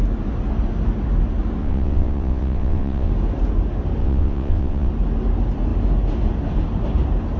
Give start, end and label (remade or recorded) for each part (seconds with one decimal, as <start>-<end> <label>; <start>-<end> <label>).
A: 0.0-1.6 recorded; 1.6-3.1 remade; 3.1-4.0 recorded; 4.0-4.9 remade; 4.9-7.4 recorded

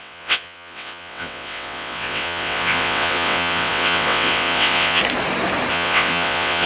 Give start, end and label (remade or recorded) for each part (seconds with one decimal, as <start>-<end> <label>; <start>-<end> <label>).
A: 0.0-5.0 remade; 5.0-5.7 recorded; 5.7-6.7 remade

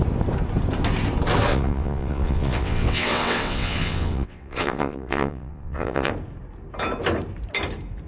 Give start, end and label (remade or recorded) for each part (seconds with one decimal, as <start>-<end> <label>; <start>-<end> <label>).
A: 0.0-1.5 recorded; 1.5-6.1 remade; 6.1-8.1 recorded